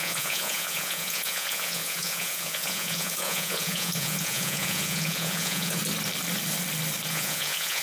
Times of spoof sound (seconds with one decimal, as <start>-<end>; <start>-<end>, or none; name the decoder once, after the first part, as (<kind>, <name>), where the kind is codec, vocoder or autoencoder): 0.0-5.8 (vocoder, Vocos); 7.1-7.8